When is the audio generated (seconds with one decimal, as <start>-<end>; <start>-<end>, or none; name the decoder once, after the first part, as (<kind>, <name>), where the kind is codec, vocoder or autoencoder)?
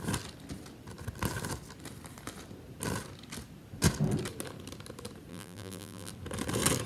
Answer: 5.3-6.1 (vocoder, BigVGAN v2)